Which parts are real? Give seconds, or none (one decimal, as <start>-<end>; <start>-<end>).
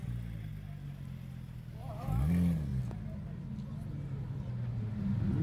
0.0-5.4